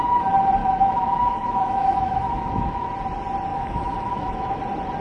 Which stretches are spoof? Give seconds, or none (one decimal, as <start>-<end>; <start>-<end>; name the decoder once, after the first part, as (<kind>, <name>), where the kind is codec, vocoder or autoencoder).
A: 0.6-2.9 (autoencoder, DAC-VAE); 3.5-4.6